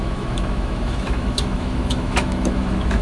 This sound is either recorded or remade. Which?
remade